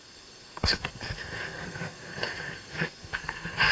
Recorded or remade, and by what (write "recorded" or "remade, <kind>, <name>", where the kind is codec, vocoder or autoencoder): remade, codec, SNAC